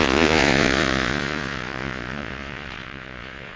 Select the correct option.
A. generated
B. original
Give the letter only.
A